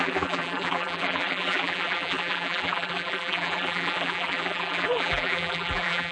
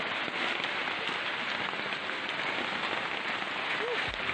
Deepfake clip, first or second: first